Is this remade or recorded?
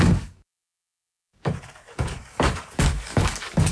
remade